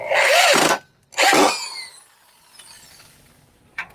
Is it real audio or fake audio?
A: real